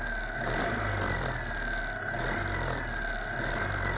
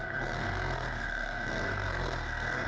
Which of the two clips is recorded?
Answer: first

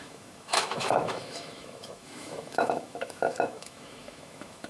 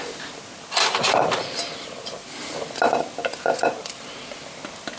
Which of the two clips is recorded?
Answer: second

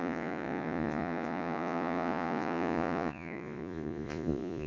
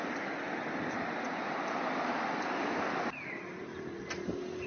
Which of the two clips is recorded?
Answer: second